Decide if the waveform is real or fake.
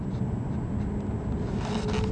real